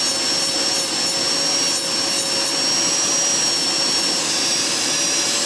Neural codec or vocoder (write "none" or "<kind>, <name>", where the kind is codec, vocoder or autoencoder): none